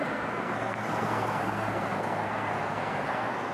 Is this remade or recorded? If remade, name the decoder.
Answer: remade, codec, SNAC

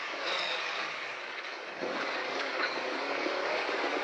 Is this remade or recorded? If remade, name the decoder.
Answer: remade, codec, DAC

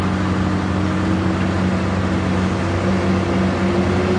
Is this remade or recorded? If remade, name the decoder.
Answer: recorded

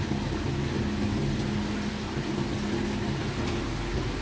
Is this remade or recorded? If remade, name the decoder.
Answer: recorded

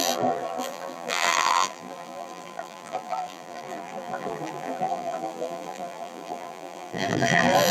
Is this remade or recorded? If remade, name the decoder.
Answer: remade, vocoder, BigVGAN v2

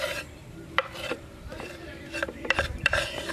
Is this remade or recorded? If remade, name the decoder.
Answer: remade, vocoder, BigVGAN v2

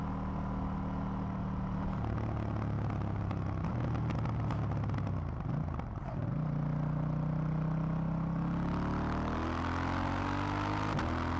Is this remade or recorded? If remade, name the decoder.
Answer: recorded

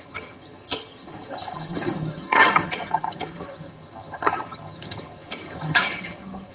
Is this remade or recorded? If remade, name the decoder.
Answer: remade, vocoder, HiFi-GAN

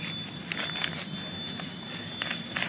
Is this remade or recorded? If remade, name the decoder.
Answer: recorded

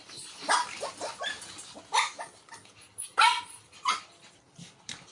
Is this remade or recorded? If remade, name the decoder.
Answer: recorded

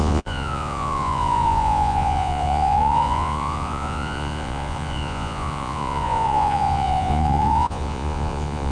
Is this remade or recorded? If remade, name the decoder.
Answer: remade, vocoder, Vocos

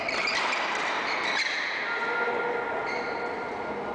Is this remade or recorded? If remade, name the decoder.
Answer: recorded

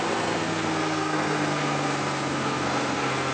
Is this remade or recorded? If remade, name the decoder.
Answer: remade, codec, SNAC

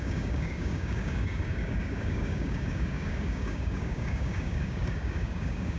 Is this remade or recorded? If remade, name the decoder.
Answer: remade, codec, DAC